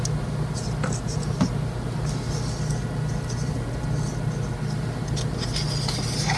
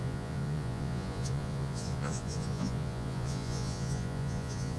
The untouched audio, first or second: first